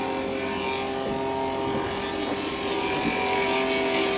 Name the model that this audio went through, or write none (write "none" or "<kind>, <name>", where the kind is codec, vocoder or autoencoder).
none